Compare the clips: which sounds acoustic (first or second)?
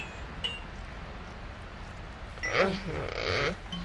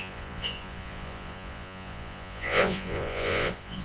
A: first